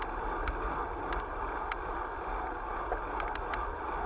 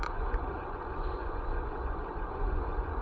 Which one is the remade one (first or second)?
second